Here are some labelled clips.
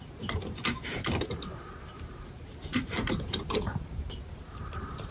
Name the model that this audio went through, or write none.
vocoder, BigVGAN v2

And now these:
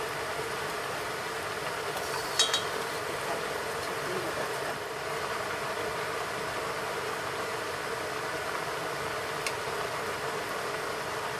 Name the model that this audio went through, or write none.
none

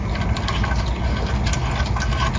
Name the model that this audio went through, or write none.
none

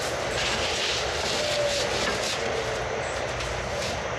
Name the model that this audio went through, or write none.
none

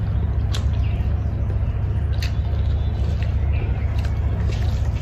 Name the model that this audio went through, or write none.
none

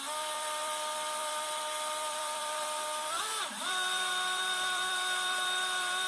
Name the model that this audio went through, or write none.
vocoder, BigVGAN v2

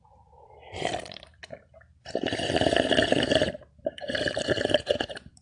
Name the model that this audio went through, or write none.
vocoder, BigVGAN v2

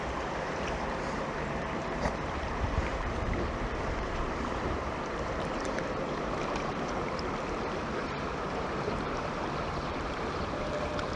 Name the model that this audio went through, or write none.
vocoder, BigVGAN v2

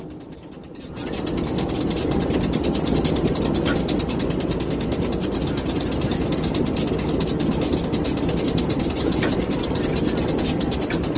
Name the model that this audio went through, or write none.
none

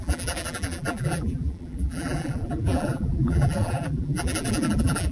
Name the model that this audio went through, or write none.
vocoder, BigVGAN v2